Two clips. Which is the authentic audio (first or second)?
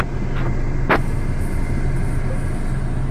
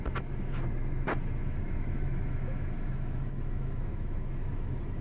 first